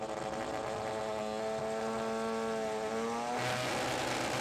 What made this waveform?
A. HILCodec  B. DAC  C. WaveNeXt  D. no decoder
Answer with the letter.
D